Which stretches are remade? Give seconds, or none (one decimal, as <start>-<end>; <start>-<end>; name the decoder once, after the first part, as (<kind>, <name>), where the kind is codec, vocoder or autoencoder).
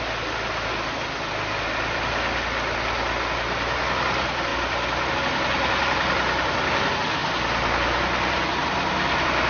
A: 4.5-5.1 (vocoder, BigVGAN v2)